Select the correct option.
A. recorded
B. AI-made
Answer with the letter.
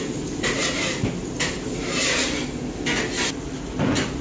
A